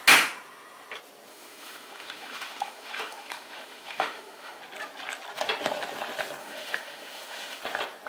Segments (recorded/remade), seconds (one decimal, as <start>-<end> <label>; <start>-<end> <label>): 0.0-1.3 recorded; 1.3-4.6 remade; 4.6-6.4 recorded; 6.4-7.6 remade; 7.6-8.1 recorded